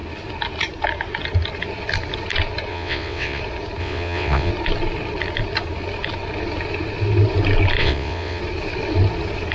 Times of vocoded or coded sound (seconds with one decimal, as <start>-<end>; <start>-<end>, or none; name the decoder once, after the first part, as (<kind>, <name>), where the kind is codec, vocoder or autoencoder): 2.7-3.4 (vocoder, WaveNeXt); 3.8-4.5; 7.8-8.4